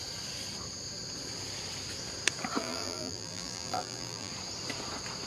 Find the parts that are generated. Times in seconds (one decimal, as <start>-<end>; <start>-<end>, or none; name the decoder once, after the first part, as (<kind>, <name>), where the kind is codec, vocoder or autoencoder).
2.6-4.3 (vocoder, BigVGAN v2)